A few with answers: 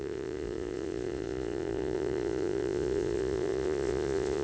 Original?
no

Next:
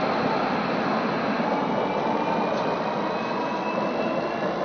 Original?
yes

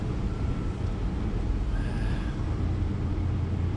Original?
yes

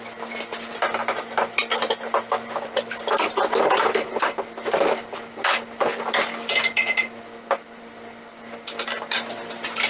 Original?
yes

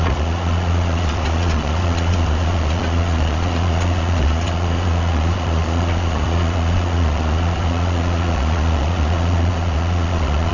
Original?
no